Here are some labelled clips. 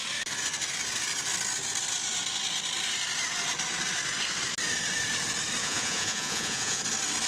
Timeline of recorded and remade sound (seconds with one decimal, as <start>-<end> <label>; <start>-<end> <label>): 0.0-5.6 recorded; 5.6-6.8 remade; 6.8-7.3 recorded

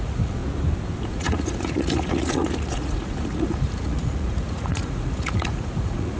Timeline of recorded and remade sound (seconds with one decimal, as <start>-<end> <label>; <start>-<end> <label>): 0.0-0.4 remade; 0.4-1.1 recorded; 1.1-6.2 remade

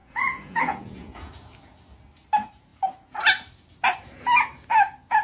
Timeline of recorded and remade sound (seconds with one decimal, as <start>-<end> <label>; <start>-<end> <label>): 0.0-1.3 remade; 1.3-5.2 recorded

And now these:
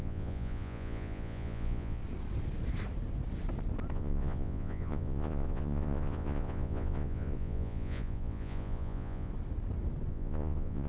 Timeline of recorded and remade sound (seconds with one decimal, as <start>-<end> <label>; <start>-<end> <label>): 0.0-2.0 remade; 2.0-3.9 recorded; 3.9-9.3 remade; 9.3-10.1 recorded; 10.1-10.9 remade

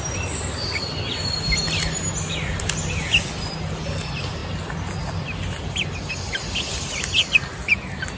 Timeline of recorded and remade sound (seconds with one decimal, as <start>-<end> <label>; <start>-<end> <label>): 0.0-8.2 recorded